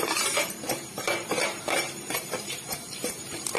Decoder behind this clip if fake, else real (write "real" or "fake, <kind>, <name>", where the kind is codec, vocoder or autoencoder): fake, vocoder, BigVGAN v2